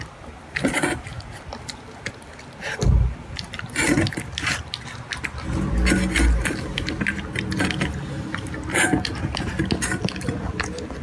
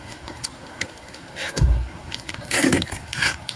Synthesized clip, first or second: second